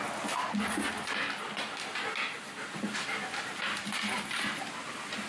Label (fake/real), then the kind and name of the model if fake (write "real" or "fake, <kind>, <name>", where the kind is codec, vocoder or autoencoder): real